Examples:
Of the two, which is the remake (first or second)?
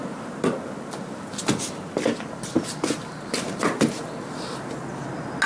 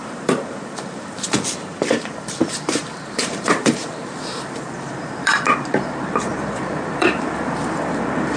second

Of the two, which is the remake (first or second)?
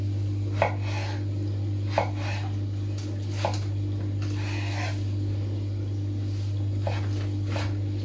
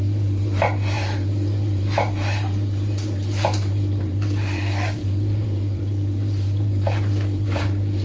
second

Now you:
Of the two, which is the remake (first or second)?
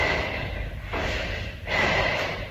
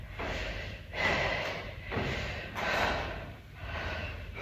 first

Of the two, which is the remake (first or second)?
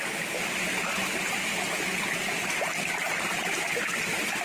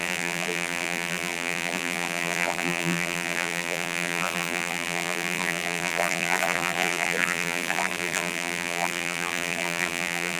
second